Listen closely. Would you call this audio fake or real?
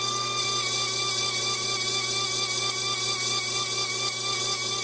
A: real